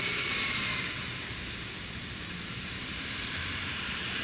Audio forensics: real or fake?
fake